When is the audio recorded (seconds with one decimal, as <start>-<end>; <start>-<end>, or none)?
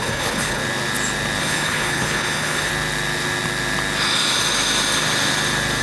0.6-1.4; 2.7-5.8